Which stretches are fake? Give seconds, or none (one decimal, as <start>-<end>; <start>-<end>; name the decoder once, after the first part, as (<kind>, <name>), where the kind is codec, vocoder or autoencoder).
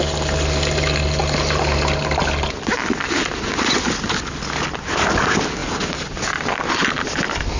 none